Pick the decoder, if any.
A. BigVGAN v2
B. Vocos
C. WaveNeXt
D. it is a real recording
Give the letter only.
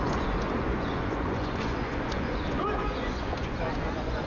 B